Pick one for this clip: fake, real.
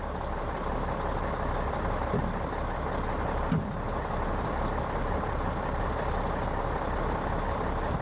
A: real